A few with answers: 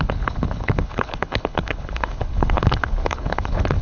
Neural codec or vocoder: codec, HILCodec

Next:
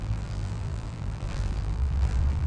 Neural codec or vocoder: vocoder, BigVGAN v2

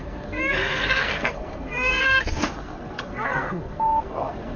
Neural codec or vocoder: codec, SNAC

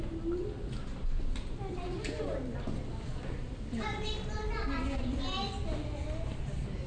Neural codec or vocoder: none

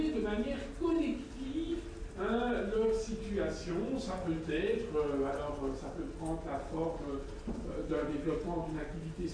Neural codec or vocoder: none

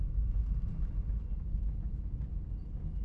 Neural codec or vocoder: none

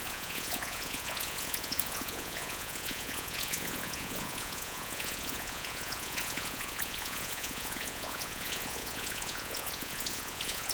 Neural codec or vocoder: vocoder, Vocos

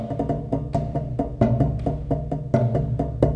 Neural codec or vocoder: none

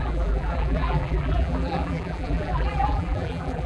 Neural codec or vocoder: vocoder, BigVGAN v2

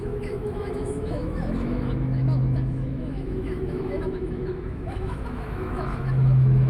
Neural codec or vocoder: autoencoder, DAC-VAE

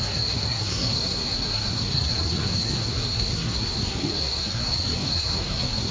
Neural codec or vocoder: codec, SNAC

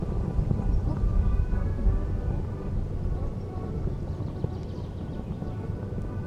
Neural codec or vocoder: vocoder, BigVGAN v2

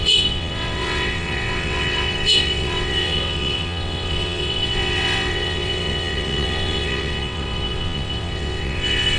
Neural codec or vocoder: vocoder, WaveNeXt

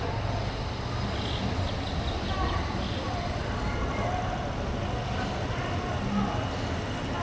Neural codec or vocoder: none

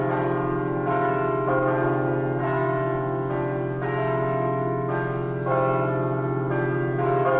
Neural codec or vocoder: none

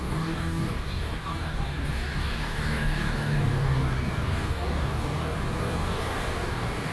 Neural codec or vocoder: codec, DAC